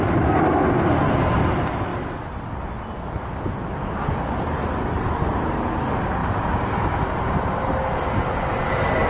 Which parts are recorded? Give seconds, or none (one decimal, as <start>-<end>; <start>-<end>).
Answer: 0.0-9.1